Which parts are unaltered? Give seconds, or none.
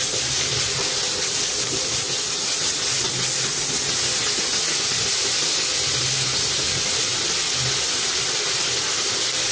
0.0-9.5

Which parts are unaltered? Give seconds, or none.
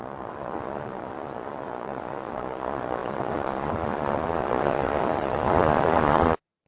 none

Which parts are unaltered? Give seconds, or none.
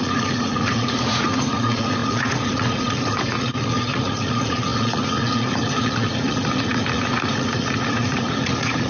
none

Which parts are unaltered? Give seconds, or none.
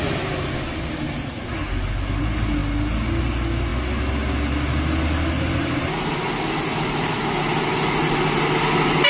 0.0-9.1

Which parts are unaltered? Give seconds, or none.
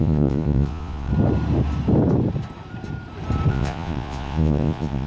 1.1-3.5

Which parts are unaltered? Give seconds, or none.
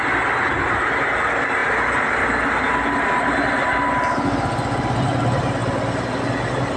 0.0-6.8